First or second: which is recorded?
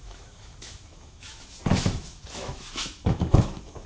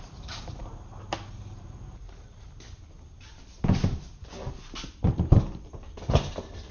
second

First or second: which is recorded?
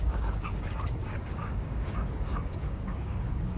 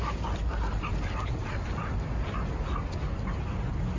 second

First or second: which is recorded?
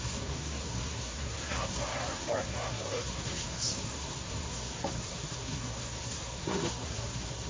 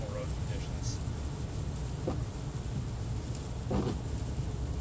second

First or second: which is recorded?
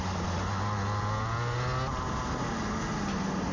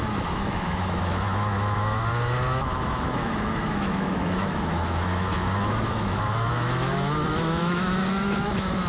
first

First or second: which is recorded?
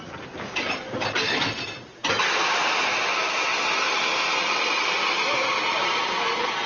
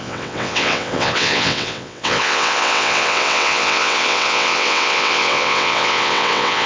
first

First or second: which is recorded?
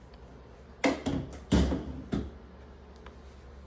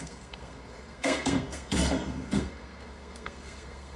first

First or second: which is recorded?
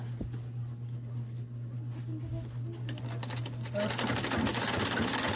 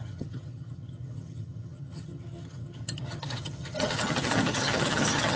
first